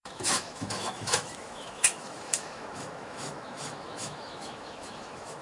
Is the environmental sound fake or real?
fake